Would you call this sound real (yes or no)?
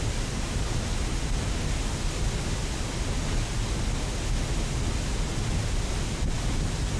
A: yes